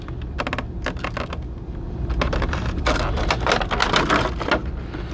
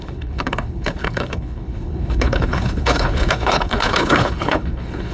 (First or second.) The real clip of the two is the first